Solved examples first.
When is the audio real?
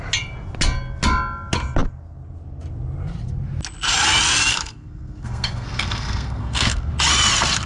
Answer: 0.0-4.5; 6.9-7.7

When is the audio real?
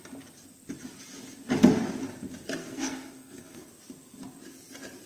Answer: 0.0-2.6; 3.7-5.1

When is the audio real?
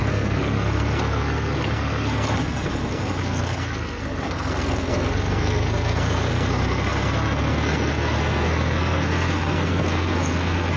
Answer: none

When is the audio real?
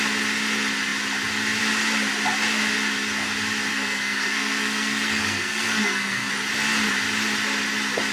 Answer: 0.0-3.7; 6.3-8.1